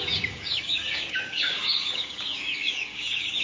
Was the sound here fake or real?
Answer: fake